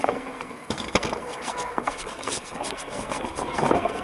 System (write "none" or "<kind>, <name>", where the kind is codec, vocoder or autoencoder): codec, SNAC